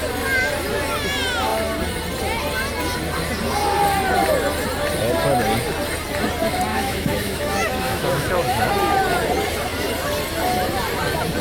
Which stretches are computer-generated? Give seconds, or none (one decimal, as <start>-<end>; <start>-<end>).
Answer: 6.7-8.7